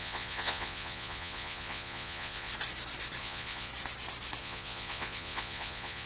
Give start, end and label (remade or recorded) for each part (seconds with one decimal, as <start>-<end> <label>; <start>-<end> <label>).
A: 0.0-2.5 remade; 2.5-3.2 recorded; 3.2-3.7 remade; 3.7-4.4 recorded; 4.4-6.1 remade

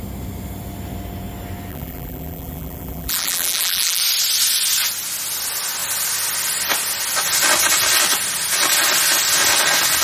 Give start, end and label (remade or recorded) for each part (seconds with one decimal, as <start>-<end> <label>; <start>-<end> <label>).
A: 0.0-1.7 recorded; 1.7-4.0 remade; 4.0-10.0 recorded

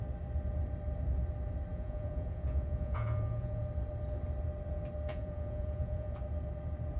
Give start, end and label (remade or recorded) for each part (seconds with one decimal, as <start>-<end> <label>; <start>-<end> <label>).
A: 0.0-1.7 recorded; 1.7-3.6 remade; 3.6-5.1 recorded; 5.1-6.2 remade; 6.2-7.0 recorded